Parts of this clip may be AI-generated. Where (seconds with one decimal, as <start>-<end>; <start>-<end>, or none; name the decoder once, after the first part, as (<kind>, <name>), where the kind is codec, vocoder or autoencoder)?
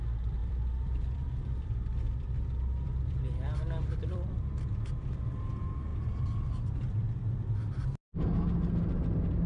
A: 0.4-5.0 (vocoder, BigVGAN v2)